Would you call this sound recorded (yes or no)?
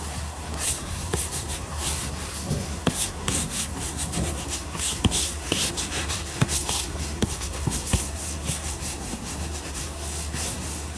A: no